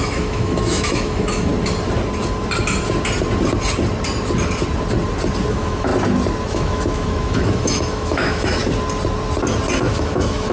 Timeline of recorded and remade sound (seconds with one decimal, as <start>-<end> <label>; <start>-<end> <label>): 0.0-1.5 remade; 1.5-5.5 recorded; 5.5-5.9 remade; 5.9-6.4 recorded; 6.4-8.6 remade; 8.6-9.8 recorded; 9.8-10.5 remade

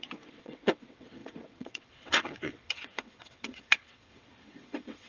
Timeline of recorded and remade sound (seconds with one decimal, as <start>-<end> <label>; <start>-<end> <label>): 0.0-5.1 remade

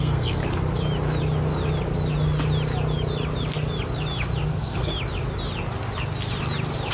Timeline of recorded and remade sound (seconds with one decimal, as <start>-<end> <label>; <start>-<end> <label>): 0.0-0.4 remade; 0.4-4.5 recorded; 4.5-4.9 remade; 4.9-6.9 recorded

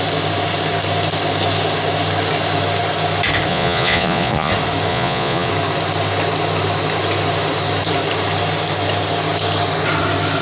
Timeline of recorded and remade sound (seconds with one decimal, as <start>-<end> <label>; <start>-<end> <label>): 0.0-3.5 recorded; 3.5-4.5 remade; 4.5-4.9 recorded; 4.9-5.5 remade; 5.5-10.4 recorded

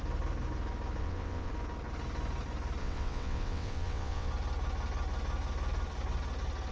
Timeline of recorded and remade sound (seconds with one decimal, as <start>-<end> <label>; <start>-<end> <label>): 0.0-1.0 recorded; 1.0-1.5 remade; 1.5-2.8 recorded; 2.8-4.3 remade; 4.3-6.7 recorded

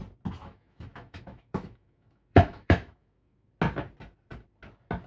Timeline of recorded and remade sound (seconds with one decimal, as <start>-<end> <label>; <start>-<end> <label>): 0.0-0.4 recorded; 0.4-3.5 remade; 3.5-5.1 recorded